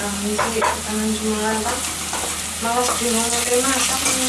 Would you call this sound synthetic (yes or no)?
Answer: no